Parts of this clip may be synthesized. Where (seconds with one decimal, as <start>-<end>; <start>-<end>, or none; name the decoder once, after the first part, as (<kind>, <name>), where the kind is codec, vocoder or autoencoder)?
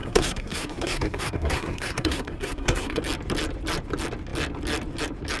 0.0-3.0 (codec, SNAC)